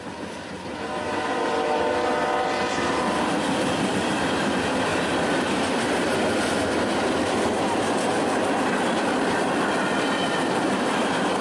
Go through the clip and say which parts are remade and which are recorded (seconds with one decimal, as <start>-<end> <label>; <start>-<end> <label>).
0.0-11.4 recorded